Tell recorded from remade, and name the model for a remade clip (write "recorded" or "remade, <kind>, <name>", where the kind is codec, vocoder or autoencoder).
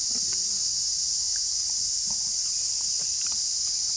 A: recorded